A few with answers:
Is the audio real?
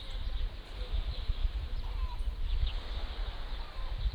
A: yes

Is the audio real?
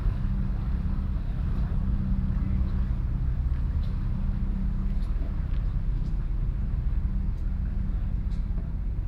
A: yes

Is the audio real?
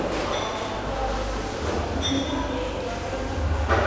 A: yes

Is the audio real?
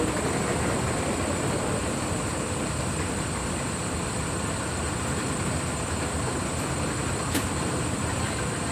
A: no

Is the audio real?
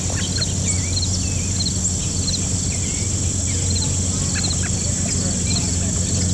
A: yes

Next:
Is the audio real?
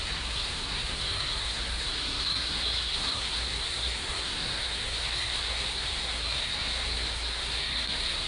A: no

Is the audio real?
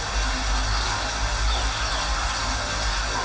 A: yes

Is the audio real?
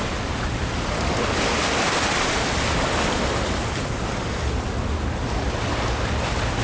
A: yes